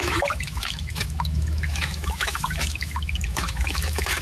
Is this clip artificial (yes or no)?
yes